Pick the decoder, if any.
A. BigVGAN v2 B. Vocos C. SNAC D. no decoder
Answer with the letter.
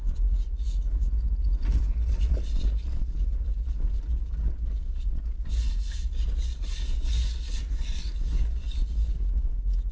D